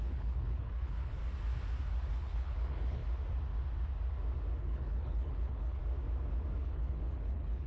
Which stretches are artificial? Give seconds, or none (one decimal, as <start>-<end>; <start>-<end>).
0.0-1.2; 2.1-3.0; 4.6-5.8; 6.6-7.7